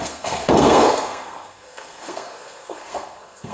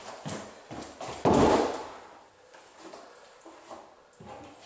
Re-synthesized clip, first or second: first